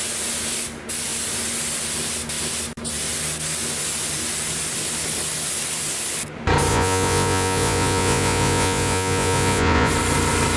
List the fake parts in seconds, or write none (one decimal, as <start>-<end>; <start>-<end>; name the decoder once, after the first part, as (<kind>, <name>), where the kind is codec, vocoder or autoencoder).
6.7-9.9 (vocoder, Vocos)